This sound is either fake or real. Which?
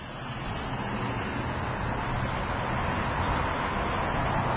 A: real